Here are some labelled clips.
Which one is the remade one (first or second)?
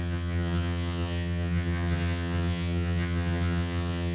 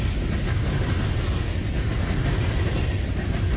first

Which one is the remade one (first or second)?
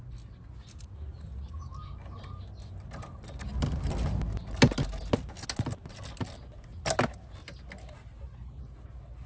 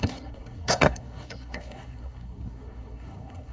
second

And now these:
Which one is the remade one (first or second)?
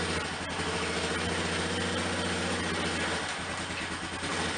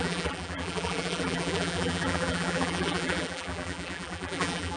second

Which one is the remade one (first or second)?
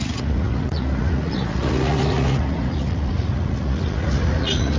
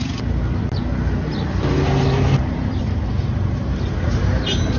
first